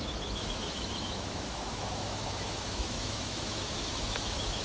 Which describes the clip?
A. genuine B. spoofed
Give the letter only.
B